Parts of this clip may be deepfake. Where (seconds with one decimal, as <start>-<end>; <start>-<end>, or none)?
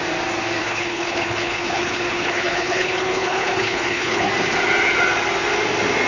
0.6-4.3